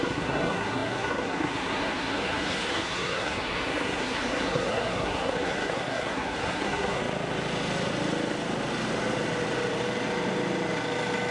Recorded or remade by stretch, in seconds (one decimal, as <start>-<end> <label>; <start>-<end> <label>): 0.0-7.0 remade; 7.0-11.3 recorded